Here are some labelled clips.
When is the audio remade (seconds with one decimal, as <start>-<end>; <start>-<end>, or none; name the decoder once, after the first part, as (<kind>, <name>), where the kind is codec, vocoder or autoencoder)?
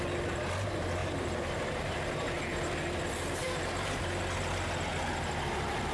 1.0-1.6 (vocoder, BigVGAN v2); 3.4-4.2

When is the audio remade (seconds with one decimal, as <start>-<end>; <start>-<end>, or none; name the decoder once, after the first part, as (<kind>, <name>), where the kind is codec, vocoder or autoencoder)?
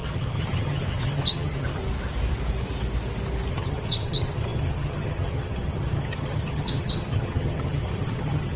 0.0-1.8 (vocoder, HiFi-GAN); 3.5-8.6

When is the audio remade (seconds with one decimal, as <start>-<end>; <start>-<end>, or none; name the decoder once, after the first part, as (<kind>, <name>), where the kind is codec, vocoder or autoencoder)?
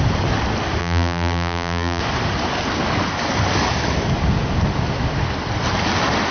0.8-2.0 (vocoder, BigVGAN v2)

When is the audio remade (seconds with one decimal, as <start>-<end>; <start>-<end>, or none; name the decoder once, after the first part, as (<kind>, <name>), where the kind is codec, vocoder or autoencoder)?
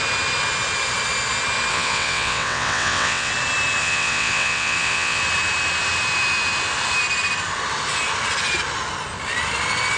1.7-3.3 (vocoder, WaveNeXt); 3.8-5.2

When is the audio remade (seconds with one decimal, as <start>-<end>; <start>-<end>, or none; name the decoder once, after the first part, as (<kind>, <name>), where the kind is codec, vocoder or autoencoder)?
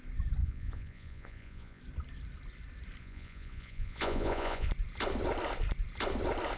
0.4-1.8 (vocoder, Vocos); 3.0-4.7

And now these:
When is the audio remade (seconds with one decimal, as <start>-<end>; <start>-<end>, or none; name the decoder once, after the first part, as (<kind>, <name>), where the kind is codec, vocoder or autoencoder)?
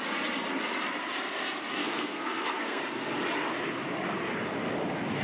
1.8-2.8 (codec, SNAC)